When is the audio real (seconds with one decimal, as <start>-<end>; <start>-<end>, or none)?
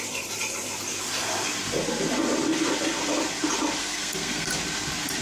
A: 0.0-3.8; 4.5-5.2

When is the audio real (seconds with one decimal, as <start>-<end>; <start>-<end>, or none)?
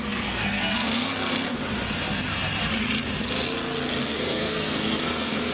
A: 1.6-4.0